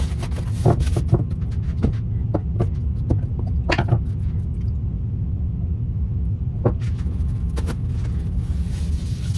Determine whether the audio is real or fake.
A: real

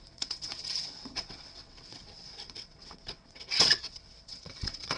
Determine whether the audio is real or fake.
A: fake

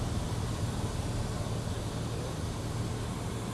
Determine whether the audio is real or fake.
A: real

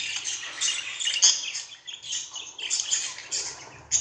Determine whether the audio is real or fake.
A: real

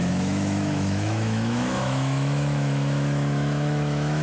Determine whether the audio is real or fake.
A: fake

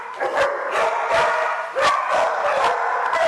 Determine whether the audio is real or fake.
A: real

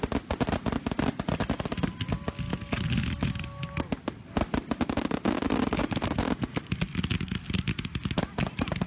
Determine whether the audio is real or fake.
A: real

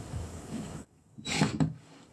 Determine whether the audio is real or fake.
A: fake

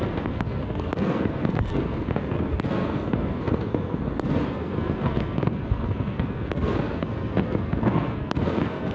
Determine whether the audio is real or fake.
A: fake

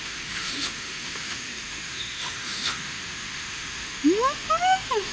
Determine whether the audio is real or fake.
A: fake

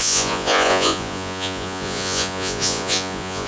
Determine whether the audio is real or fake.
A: fake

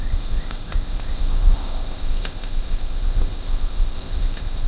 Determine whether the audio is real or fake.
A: fake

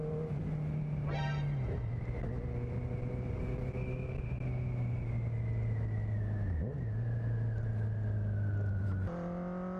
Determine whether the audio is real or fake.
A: real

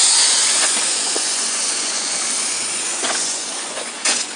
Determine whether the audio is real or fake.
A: fake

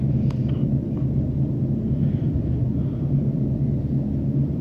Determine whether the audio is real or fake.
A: real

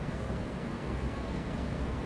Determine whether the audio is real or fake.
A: fake